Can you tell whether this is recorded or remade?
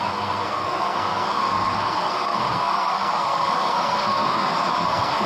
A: remade